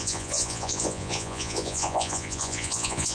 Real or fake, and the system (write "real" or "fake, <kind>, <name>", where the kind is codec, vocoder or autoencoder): fake, vocoder, Vocos